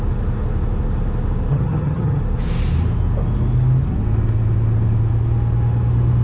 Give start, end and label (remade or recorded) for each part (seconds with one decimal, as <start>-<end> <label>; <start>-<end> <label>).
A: 0.0-1.5 recorded; 1.5-2.2 remade; 2.2-6.2 recorded